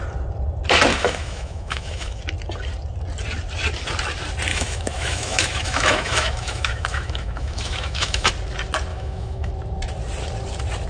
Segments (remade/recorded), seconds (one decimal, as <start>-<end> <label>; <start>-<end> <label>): 0.0-0.9 recorded; 0.9-2.2 remade; 2.2-4.5 recorded; 4.5-8.3 remade; 8.3-8.9 recorded; 8.9-9.5 remade; 9.5-10.9 recorded